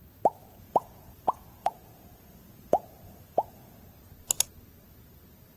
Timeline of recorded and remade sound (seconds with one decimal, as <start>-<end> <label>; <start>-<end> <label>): 0.0-0.4 recorded; 0.4-3.8 remade; 3.8-5.6 recorded